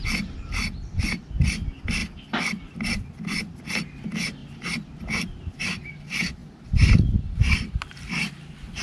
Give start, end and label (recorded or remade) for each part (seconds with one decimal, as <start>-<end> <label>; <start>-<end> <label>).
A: 0.0-8.8 recorded